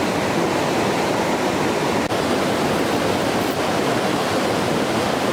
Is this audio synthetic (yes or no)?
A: no